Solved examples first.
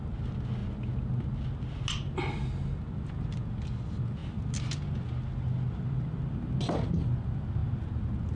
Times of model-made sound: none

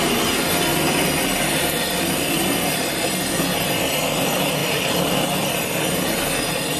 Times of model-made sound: 1.5-3.1 (vocoder, BigVGAN v2); 4.6-5.1